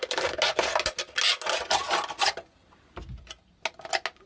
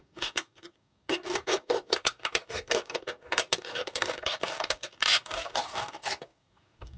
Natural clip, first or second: first